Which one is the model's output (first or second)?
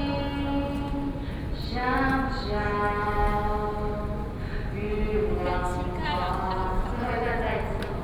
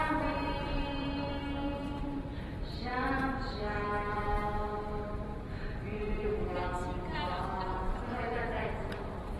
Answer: second